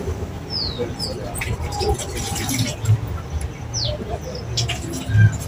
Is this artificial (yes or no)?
no